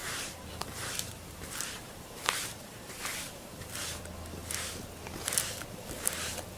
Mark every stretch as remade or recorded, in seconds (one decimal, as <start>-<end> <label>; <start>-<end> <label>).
0.0-4.0 remade; 4.0-6.6 recorded